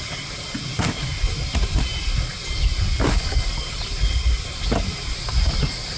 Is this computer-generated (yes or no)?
no